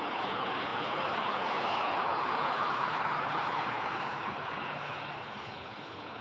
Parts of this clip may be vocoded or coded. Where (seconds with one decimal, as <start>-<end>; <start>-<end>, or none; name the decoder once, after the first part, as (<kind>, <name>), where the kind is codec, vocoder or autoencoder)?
0.0-6.2 (codec, HILCodec)